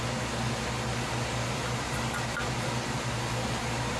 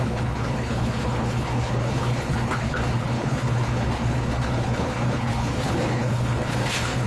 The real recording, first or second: first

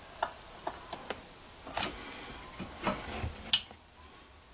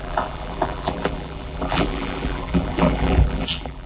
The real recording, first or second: first